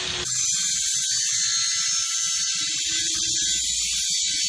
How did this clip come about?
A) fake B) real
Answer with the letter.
B